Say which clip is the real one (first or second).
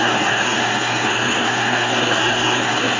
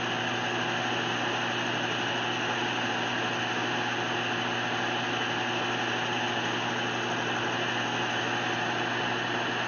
second